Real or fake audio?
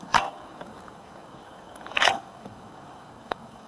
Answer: fake